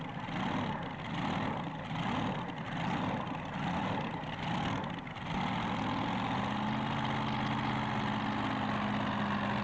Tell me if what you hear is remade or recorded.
recorded